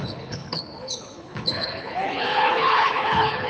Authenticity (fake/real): fake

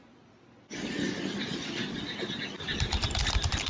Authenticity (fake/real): real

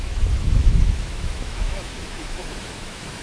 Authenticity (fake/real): fake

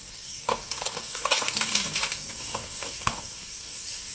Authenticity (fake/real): fake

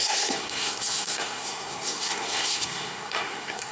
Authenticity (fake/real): fake